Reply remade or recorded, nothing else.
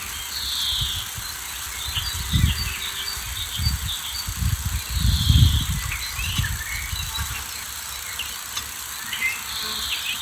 recorded